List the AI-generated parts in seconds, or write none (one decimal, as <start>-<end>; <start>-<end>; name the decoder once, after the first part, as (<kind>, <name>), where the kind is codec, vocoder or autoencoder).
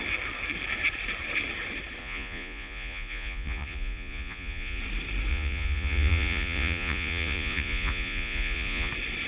2.0-4.8 (vocoder, Vocos); 5.3-8.9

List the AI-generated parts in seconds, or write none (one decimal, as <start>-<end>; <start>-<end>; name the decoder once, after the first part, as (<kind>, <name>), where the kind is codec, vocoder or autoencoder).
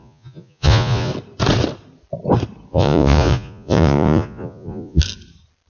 0.0-1.1 (vocoder, Vocos); 2.7-5.0